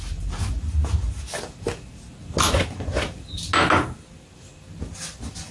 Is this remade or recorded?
recorded